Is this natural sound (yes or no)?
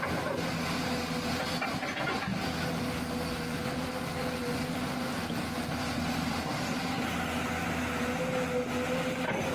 yes